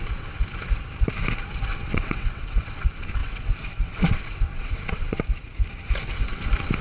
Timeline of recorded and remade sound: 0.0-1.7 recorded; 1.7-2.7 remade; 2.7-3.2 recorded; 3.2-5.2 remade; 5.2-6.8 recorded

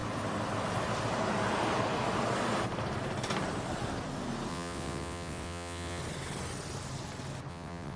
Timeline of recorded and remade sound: 0.0-4.5 recorded; 4.5-6.0 remade; 6.0-7.5 recorded; 7.5-8.0 remade

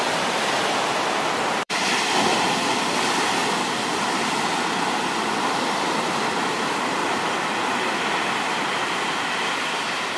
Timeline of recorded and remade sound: 0.0-7.0 remade; 7.0-7.8 recorded; 7.8-10.2 remade

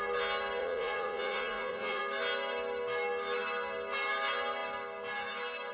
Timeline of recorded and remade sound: 0.0-0.6 recorded; 0.6-2.0 remade; 2.0-5.7 recorded

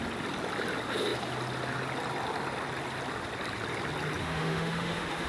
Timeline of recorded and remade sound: 0.0-4.2 recorded; 4.2-5.3 remade

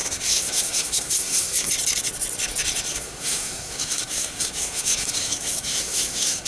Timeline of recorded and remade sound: 0.0-1.7 remade; 1.7-2.9 recorded; 2.9-6.5 remade

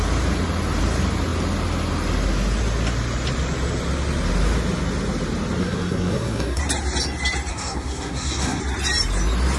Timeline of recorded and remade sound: 0.0-5.6 recorded; 5.6-6.6 remade; 6.6-7.5 recorded; 7.5-8.6 remade; 8.6-9.6 recorded

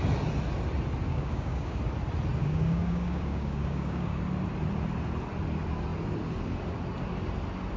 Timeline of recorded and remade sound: 0.0-1.1 recorded; 1.1-1.8 remade; 1.8-2.4 recorded; 2.4-4.2 remade; 4.2-7.8 recorded